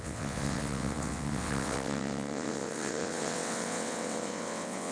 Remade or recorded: remade